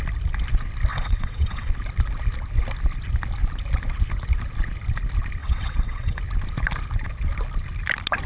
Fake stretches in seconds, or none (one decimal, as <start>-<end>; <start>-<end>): 0.9-1.7; 5.4-6.2